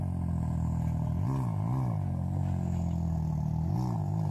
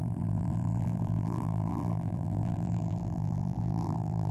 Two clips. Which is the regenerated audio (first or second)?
second